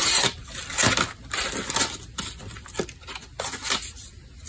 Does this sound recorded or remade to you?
recorded